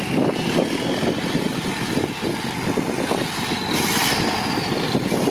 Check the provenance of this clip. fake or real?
real